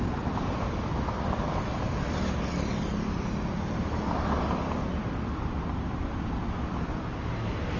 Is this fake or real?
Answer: real